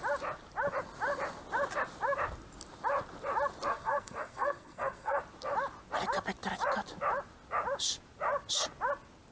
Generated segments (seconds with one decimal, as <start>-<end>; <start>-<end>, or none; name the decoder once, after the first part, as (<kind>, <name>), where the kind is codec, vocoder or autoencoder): 3.7-5.2 (codec, SNAC)